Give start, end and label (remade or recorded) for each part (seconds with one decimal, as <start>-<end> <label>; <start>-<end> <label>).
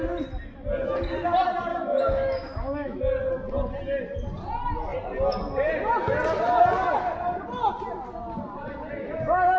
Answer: 0.0-1.7 recorded; 1.7-3.0 remade; 3.0-9.6 recorded